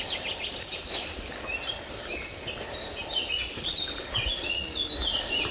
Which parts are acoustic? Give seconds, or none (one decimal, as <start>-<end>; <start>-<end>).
0.0-5.5